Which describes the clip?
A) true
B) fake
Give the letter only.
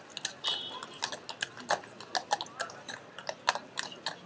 A